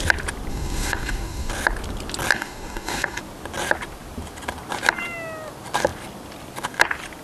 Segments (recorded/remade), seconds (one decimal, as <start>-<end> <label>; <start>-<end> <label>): 0.0-0.5 recorded; 0.5-1.5 remade; 1.5-2.3 recorded; 2.3-3.2 remade; 3.2-7.2 recorded